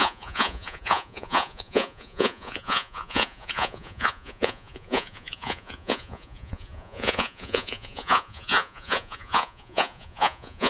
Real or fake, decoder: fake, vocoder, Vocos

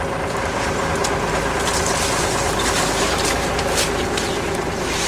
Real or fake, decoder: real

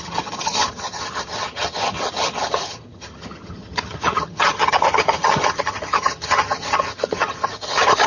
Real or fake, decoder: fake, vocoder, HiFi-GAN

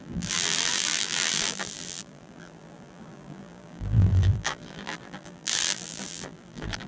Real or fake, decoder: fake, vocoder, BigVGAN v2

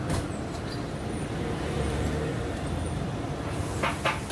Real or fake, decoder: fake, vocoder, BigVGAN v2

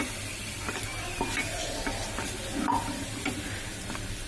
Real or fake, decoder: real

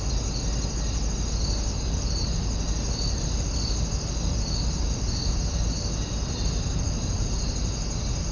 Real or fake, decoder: real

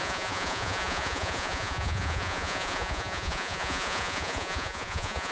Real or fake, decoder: fake, vocoder, Vocos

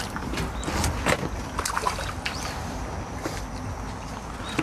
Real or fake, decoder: real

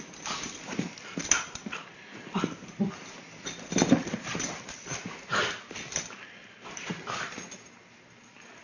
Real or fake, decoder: real